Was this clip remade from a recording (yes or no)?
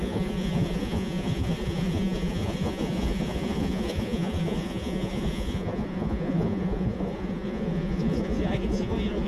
yes